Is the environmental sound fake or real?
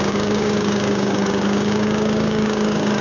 fake